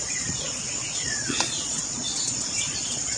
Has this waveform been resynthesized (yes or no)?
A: yes